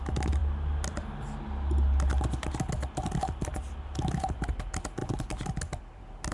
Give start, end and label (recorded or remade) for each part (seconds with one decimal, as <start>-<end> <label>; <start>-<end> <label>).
0.0-6.3 recorded